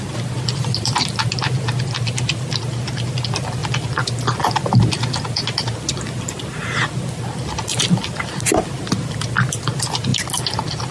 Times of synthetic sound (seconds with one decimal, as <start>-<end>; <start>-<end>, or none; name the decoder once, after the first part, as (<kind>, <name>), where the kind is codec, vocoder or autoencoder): none